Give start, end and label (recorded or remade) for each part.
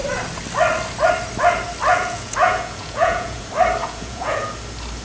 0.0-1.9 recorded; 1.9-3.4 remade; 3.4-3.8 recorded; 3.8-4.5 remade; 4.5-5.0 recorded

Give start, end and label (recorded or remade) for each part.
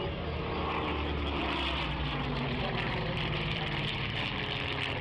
0.0-1.4 recorded; 1.4-4.3 remade; 4.3-5.0 recorded